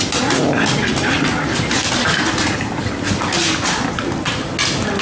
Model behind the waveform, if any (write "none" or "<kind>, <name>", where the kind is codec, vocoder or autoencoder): none